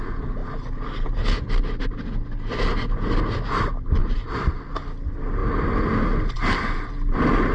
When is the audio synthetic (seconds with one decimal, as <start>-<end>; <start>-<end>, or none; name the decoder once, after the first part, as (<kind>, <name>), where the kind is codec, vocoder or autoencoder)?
4.0-4.7 (vocoder, BigVGAN v2)